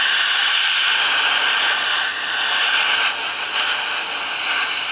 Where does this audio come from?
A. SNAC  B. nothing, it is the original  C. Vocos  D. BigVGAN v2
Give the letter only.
B